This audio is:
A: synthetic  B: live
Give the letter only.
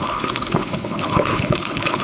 A